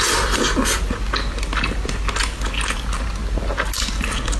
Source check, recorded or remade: recorded